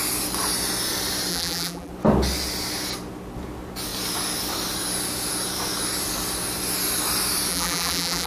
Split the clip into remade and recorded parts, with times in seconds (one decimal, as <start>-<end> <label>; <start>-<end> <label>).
0.0-1.3 recorded; 1.3-1.9 remade; 1.9-7.5 recorded; 7.5-8.3 remade